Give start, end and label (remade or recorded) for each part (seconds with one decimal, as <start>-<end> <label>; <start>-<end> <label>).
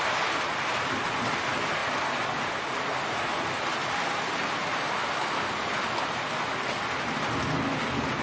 0.0-8.2 recorded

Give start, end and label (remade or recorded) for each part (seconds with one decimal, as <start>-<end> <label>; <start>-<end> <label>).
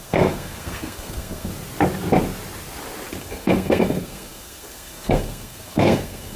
0.0-1.5 remade; 1.5-3.2 recorded; 3.2-6.4 remade